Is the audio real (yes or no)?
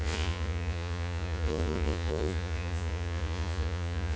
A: no